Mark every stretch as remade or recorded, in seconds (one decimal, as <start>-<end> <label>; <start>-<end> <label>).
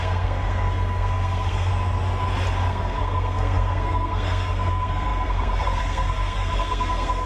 0.0-1.7 remade; 1.7-2.7 recorded; 2.7-7.3 remade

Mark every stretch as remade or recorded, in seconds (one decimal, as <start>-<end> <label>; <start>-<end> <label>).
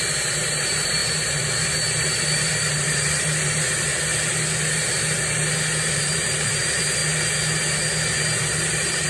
0.0-3.9 remade; 3.9-5.9 recorded; 5.9-7.0 remade; 7.0-8.6 recorded; 8.6-9.1 remade